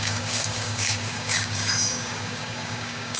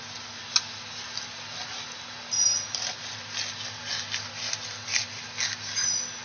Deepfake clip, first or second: first